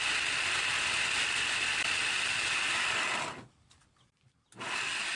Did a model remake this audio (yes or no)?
no